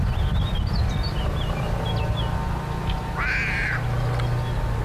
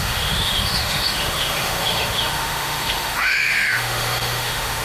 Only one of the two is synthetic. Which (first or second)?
second